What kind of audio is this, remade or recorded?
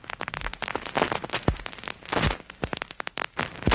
recorded